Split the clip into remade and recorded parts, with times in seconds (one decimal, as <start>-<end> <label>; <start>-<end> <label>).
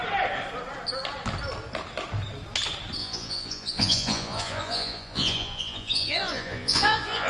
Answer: 0.0-3.0 recorded; 3.0-7.3 remade